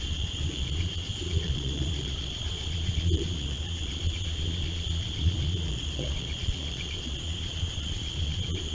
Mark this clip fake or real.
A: fake